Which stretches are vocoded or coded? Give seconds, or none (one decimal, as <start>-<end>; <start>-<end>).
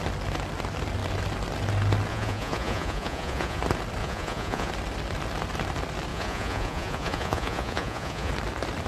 2.1-3.6; 4.0-4.7; 6.1-8.3